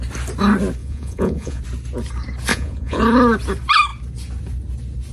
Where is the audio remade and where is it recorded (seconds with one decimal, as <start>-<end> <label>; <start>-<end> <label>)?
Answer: 0.0-0.8 recorded; 0.8-1.6 remade; 1.6-2.5 recorded; 2.5-3.0 remade; 3.0-5.1 recorded